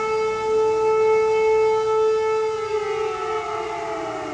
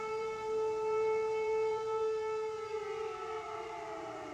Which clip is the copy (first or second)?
second